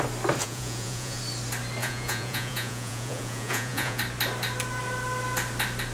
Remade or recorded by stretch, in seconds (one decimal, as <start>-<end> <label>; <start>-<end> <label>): 0.0-0.4 recorded; 0.4-1.2 remade; 1.2-1.8 recorded; 1.8-4.0 remade; 4.0-5.9 recorded